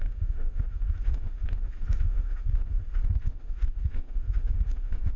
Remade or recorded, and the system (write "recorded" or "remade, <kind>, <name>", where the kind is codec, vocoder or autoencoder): remade, autoencoder, DAC-VAE